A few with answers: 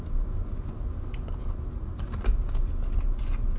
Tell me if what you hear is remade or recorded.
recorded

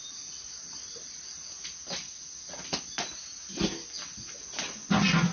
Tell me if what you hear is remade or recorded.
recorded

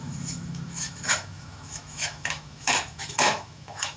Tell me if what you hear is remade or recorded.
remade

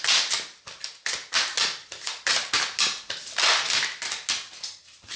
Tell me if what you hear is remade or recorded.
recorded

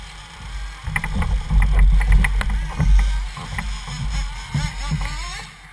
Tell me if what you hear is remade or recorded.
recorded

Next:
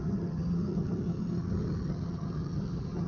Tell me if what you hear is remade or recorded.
remade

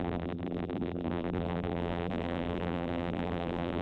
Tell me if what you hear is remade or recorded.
remade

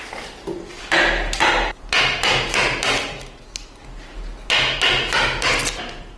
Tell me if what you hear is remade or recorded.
recorded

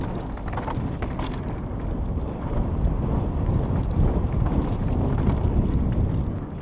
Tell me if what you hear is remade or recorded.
recorded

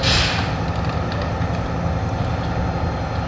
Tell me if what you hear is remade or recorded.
recorded